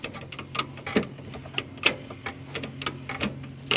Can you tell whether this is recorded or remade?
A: recorded